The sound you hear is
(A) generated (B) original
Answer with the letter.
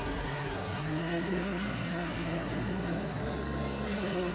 A